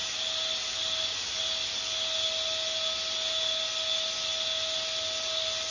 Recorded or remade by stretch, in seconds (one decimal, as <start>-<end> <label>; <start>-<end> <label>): 0.0-5.7 recorded